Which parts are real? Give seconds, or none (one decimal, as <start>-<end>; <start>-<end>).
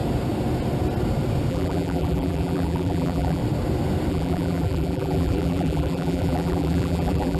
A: 0.0-1.5; 3.4-4.1